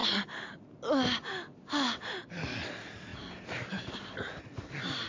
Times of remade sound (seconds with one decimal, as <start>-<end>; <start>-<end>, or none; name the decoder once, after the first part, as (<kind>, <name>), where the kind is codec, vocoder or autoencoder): 3.1-4.4 (vocoder, BigVGAN v2)